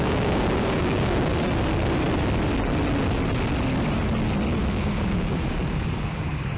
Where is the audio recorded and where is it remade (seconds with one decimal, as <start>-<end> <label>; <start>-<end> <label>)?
0.0-1.3 remade; 1.3-4.7 recorded; 4.7-6.6 remade